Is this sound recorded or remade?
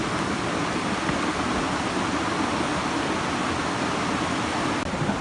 recorded